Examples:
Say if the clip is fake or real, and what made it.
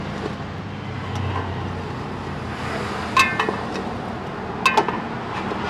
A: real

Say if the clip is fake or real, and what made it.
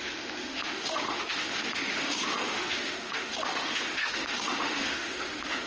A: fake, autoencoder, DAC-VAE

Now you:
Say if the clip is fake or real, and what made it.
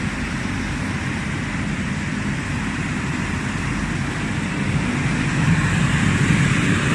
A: real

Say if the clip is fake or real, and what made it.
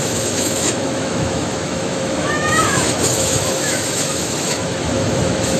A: fake, autoencoder, DAC-VAE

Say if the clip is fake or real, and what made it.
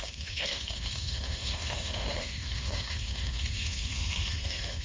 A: fake, autoencoder, DAC-VAE